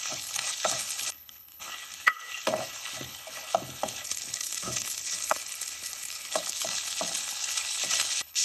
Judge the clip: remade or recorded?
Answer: remade